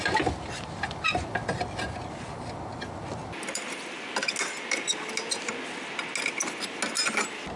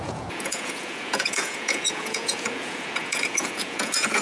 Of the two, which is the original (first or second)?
first